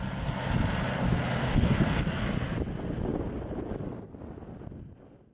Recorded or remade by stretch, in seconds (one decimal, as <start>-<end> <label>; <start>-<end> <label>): 0.0-1.4 recorded; 1.4-2.2 remade; 2.2-5.3 recorded